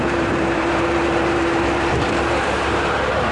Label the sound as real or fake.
fake